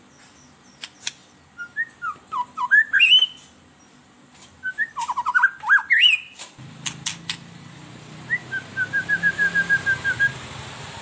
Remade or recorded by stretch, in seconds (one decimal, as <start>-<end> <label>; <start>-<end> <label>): 0.0-11.0 recorded